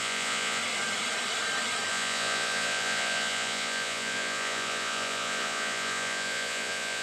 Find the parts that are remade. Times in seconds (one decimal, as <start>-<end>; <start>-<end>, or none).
0.0-0.6; 1.9-7.0